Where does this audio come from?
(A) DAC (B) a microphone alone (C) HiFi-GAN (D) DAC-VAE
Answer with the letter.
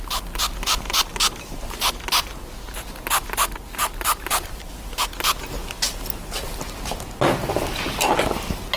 B